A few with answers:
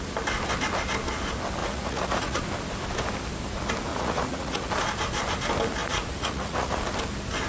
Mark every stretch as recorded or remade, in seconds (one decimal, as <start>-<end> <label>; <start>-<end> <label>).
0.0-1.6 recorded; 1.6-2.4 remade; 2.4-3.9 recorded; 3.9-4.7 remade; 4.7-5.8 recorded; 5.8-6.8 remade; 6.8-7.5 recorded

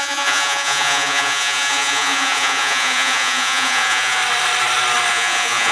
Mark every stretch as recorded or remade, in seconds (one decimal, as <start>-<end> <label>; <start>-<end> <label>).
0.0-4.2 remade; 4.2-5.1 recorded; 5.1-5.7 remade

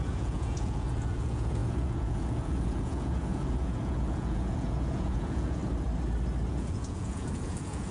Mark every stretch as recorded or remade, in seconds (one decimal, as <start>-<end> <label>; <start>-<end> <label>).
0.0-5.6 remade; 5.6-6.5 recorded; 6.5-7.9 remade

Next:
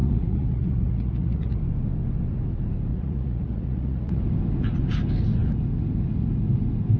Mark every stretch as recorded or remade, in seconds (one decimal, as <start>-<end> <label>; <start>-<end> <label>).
0.0-1.6 remade; 1.6-2.9 recorded; 2.9-4.2 remade; 4.2-7.0 recorded